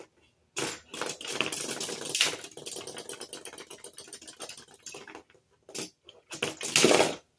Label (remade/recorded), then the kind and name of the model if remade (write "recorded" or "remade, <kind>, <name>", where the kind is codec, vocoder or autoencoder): recorded